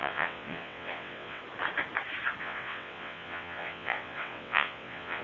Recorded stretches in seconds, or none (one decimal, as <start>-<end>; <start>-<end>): 1.4-2.4